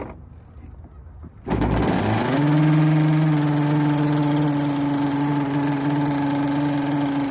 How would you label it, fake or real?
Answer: real